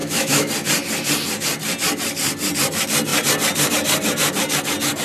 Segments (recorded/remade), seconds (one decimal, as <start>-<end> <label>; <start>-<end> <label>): 0.0-0.5 remade; 0.5-5.0 recorded